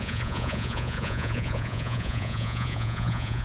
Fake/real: fake